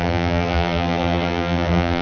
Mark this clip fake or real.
fake